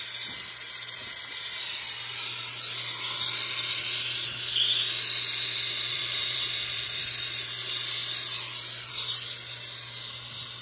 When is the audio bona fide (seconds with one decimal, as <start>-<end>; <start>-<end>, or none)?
0.0-5.9; 7.0-10.6